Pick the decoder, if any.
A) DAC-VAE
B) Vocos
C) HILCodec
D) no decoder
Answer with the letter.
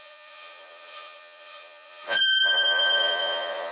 B